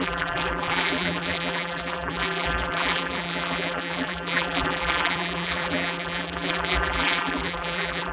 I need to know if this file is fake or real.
fake